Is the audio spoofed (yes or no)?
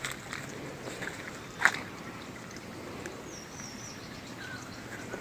no